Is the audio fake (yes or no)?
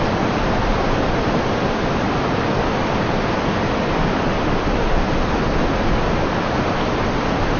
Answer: no